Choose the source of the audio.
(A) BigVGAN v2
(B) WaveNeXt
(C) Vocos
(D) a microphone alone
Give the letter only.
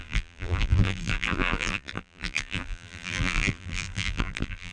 A